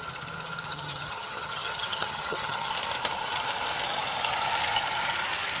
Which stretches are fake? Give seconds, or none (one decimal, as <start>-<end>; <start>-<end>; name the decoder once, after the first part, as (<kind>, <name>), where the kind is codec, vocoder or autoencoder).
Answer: 0.7-2.7 (vocoder, HiFi-GAN)